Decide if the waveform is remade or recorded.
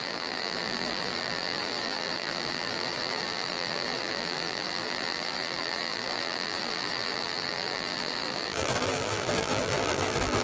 remade